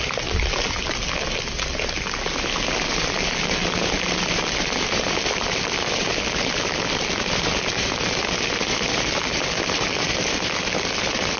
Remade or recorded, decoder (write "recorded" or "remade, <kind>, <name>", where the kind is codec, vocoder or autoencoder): recorded